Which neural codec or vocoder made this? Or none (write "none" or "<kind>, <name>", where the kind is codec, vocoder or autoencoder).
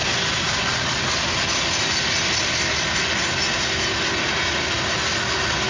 none